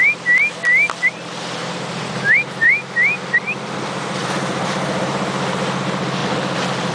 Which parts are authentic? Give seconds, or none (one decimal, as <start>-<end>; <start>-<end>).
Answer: 0.0-1.6; 2.7-4.2; 5.1-6.9

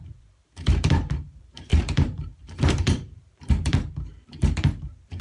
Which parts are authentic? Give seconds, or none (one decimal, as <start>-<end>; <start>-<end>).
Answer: none